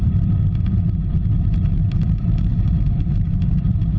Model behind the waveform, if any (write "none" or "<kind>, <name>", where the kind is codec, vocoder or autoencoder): vocoder, BigVGAN v2